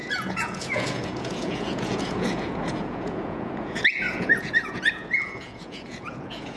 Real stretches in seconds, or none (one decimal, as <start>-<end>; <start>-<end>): none